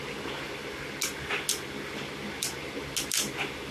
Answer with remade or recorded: recorded